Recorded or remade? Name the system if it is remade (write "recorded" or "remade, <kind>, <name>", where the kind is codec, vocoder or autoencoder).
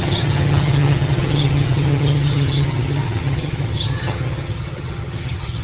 remade, vocoder, HiFi-GAN